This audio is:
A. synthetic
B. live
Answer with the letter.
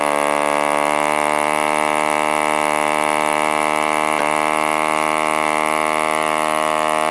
B